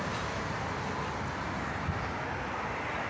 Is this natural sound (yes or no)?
yes